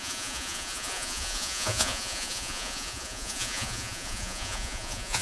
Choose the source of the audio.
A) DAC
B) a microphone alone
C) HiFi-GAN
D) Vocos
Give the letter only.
D